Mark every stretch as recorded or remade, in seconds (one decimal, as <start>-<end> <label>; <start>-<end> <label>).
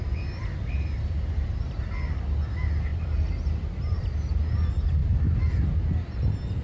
0.0-2.9 recorded; 2.9-4.2 remade; 4.2-6.6 recorded